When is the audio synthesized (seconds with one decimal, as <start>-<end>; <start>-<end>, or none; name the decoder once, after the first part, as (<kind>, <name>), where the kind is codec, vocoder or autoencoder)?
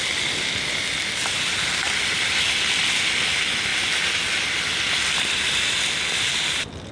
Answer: none